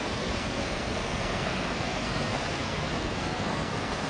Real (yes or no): no